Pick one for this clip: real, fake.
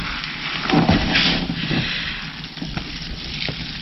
real